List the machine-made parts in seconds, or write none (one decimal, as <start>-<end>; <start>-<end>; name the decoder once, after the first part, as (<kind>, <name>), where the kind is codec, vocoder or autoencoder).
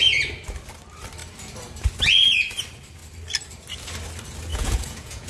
4.5-5.3 (vocoder, Vocos)